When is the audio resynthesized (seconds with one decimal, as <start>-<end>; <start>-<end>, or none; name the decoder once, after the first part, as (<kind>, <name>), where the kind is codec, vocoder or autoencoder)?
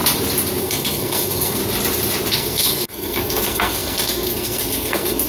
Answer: 0.6-1.6 (codec, SNAC); 2.3-5.3